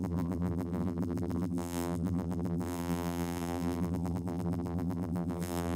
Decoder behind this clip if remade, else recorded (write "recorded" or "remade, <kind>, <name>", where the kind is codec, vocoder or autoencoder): remade, vocoder, BigVGAN v2